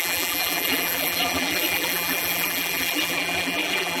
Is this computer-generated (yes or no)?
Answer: yes